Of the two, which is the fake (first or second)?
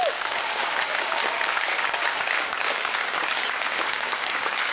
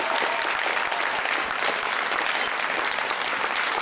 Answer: first